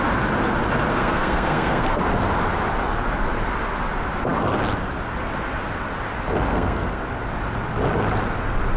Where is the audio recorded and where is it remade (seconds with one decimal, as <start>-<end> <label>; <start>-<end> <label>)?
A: 0.0-0.9 recorded; 0.9-2.0 remade; 2.0-6.5 recorded; 6.5-7.0 remade; 7.0-8.8 recorded